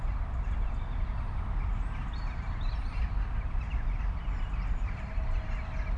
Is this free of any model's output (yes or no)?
yes